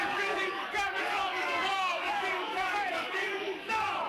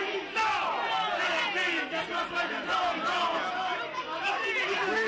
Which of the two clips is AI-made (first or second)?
first